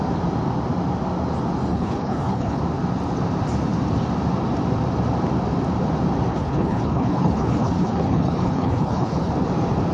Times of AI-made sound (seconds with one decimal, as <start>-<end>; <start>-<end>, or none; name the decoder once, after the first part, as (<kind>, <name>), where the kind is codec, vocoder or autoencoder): 1.7-2.6 (codec, HILCodec); 6.3-9.3